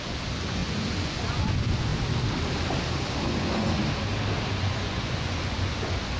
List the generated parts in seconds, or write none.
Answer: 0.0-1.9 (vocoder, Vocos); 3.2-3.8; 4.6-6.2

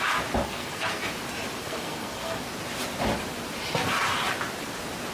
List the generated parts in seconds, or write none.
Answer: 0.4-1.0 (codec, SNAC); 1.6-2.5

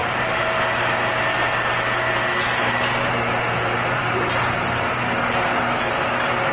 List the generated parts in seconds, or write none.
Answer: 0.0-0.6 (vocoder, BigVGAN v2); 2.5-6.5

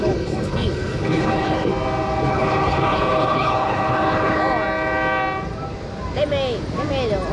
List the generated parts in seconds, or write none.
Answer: 0.0-1.7 (codec, HILCodec); 2.3-4.4

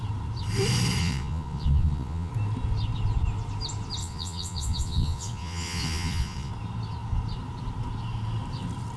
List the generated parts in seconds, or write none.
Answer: 1.0-2.3 (vocoder, Vocos); 4.0-6.5